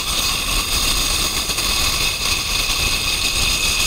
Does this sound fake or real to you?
real